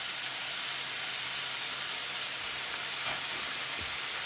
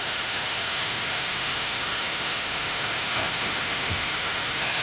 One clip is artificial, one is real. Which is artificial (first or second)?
second